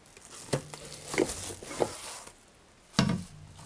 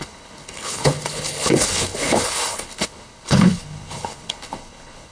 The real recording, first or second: first